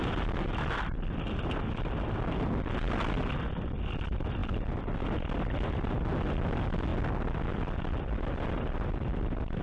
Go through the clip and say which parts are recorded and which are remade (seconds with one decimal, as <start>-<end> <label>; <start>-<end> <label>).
0.0-9.6 recorded